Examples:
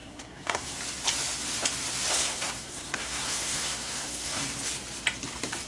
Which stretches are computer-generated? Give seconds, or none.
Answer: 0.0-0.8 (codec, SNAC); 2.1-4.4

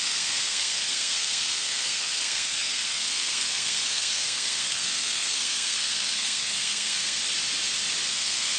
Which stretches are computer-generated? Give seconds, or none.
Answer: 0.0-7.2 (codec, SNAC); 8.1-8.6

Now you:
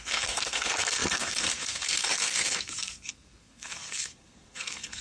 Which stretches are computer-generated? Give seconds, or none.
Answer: 0.0-5.0 (codec, SNAC)